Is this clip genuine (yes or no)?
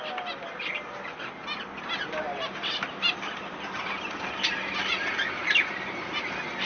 yes